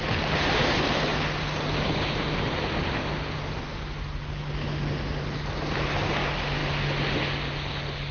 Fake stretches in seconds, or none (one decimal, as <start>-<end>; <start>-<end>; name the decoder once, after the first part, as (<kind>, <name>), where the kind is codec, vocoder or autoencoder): none

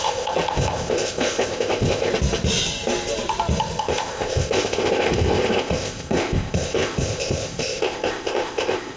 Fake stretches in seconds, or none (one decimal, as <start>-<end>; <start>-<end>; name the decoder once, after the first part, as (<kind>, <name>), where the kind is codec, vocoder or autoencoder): 0.0-2.1 (codec, ZipCodec); 3.8-9.0